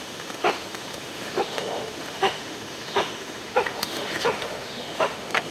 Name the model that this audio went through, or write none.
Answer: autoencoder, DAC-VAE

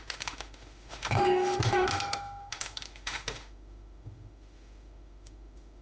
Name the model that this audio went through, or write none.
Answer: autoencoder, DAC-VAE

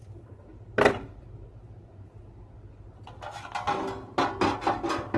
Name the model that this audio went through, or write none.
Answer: none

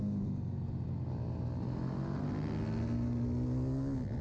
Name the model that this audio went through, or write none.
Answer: none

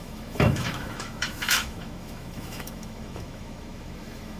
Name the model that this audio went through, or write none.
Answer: autoencoder, DAC-VAE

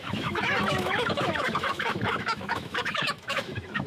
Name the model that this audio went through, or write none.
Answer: autoencoder, DAC-VAE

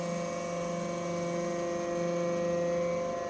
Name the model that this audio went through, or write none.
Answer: none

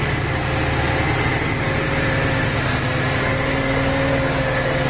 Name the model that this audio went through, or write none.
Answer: none